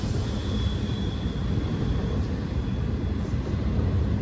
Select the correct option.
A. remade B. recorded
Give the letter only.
B